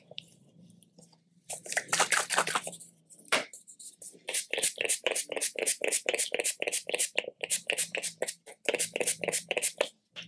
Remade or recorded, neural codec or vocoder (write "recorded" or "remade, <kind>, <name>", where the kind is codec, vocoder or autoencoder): remade, vocoder, BigVGAN v2